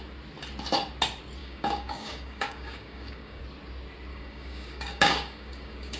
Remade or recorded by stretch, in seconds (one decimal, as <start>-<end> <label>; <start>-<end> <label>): 0.0-1.4 recorded; 1.4-3.4 remade; 3.4-4.1 recorded; 4.1-6.0 remade